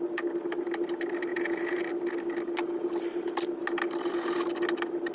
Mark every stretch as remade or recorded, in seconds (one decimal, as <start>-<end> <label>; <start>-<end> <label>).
0.0-1.3 recorded; 1.3-1.8 remade; 1.8-5.1 recorded